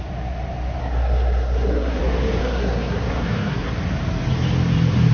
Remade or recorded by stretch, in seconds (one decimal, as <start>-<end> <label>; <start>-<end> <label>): 0.0-0.8 recorded; 0.8-2.0 remade; 2.0-2.4 recorded; 2.4-3.7 remade; 3.7-5.1 recorded